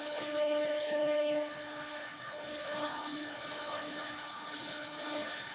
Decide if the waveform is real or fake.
fake